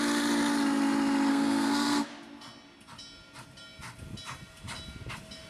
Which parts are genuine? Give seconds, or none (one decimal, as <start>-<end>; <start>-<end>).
0.0-1.3; 2.1-5.5